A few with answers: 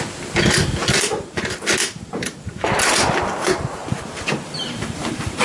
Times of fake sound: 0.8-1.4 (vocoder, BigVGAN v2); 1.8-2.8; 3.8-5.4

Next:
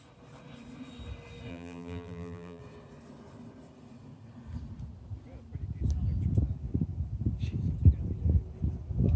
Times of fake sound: 1.5-2.6 (vocoder, BigVGAN v2)

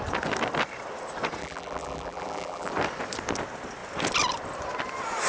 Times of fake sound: 1.4-2.7 (vocoder, BigVGAN v2)

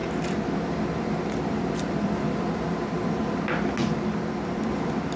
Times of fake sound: 0.0-3.1 (vocoder, BigVGAN v2); 3.8-4.7

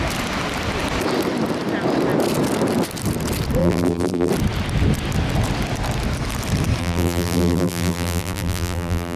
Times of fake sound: 3.6-4.3 (vocoder, BigVGAN v2); 6.8-9.2